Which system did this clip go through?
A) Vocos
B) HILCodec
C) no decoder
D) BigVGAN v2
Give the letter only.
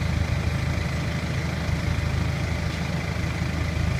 C